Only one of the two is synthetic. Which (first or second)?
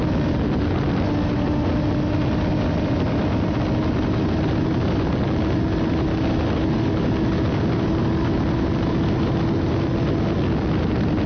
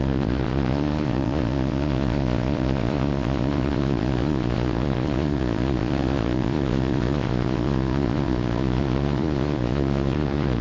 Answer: second